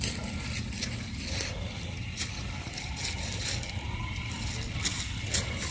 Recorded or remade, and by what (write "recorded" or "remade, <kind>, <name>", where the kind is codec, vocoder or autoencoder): recorded